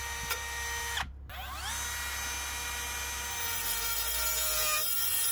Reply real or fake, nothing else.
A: real